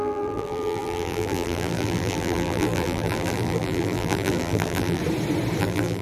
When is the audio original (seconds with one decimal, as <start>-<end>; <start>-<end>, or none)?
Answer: 5.0-5.6